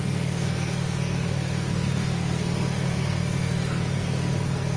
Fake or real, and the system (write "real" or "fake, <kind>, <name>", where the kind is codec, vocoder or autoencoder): fake, codec, SNAC